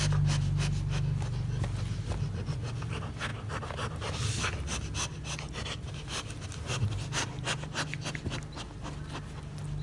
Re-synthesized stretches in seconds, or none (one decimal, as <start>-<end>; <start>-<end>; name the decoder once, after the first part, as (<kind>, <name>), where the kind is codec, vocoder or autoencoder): none